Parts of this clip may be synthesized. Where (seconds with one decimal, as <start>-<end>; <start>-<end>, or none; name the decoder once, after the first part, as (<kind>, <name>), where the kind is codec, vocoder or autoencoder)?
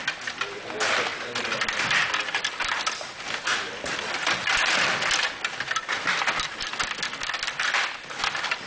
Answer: none